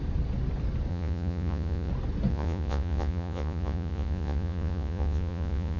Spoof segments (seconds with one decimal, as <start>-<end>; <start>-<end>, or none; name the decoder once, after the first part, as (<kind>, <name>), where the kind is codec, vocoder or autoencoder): 0.9-1.9 (vocoder, Vocos); 2.3-5.8